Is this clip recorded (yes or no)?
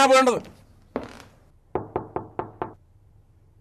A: yes